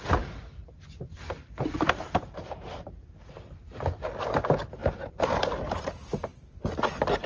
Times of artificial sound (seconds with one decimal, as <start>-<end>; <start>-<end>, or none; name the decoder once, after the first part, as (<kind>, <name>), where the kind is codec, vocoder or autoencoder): 0.6-3.3 (vocoder, BigVGAN v2); 4.8-5.9